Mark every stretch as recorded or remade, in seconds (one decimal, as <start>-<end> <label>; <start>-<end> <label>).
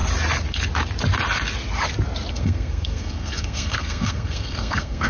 0.0-2.3 recorded; 2.3-5.1 remade